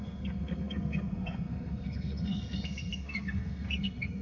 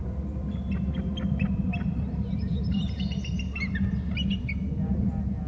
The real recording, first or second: second